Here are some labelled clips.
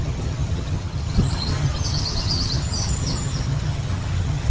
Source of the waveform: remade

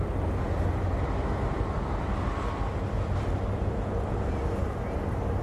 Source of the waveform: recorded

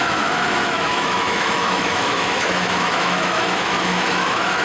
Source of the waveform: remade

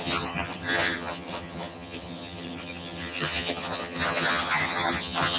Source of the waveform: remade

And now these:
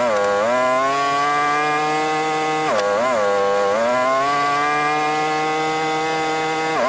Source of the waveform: recorded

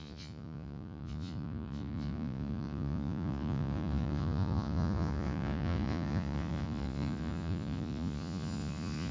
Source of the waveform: remade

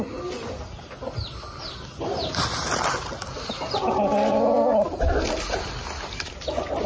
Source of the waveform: recorded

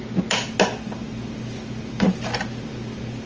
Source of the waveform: recorded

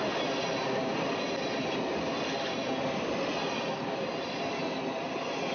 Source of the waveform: recorded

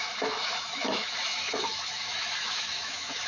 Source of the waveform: remade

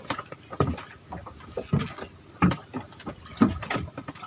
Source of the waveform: recorded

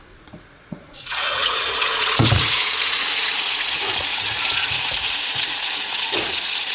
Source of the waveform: remade